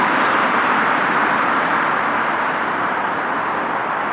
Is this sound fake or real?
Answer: fake